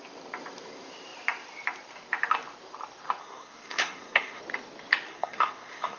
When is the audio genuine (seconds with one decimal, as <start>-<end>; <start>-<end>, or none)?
0.0-3.2; 4.4-5.1